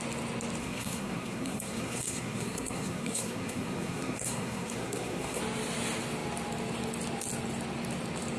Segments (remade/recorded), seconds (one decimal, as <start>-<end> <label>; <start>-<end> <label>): 0.0-0.6 recorded; 0.6-5.4 remade; 5.4-8.4 recorded